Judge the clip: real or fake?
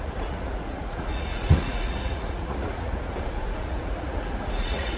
fake